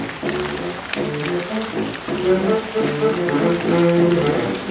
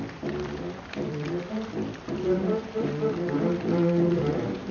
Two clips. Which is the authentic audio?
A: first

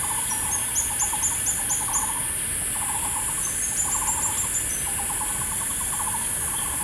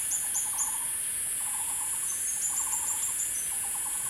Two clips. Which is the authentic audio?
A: first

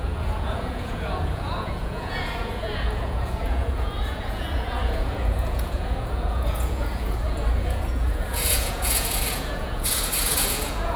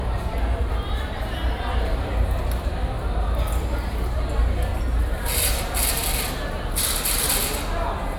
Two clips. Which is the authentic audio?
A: second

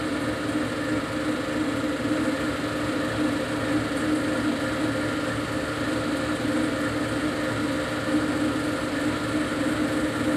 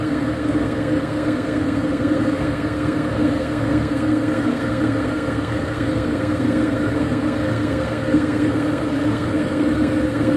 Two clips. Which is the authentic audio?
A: first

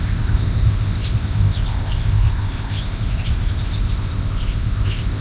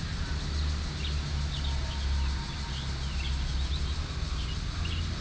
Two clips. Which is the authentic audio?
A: second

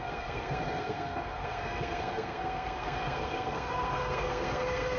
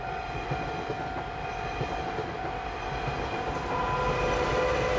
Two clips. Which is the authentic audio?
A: second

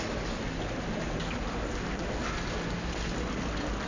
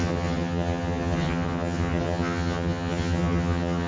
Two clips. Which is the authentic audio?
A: first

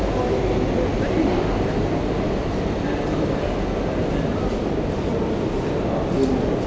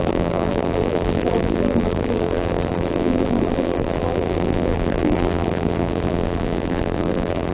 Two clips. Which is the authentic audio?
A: first